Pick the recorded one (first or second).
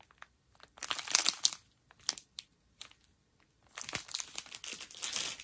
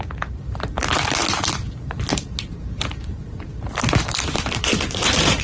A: first